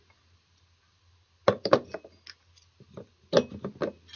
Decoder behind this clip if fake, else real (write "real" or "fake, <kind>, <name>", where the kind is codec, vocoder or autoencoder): real